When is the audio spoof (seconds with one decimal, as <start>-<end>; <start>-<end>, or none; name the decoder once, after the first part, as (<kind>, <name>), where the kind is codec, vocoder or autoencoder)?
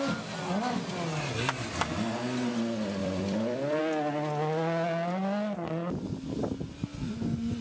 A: 3.0-3.8 (vocoder, BigVGAN v2)